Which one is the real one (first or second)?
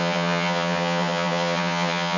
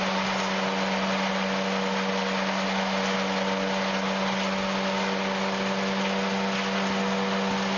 second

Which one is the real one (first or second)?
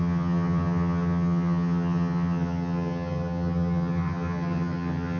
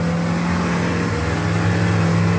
second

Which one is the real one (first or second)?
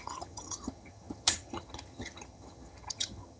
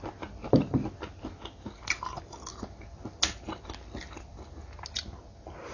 second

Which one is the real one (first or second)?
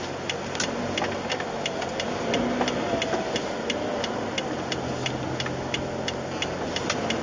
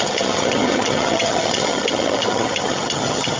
first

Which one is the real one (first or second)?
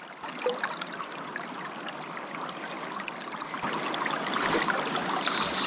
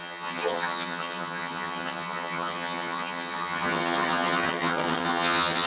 first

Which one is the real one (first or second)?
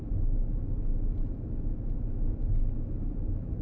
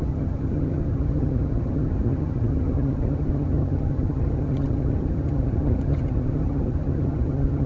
first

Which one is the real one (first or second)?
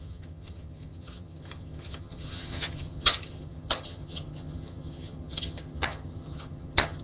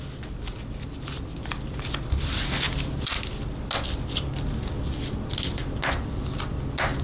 second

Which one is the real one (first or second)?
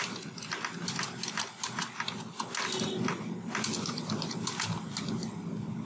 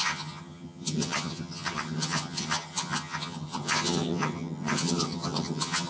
first